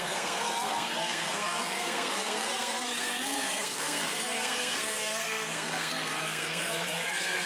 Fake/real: fake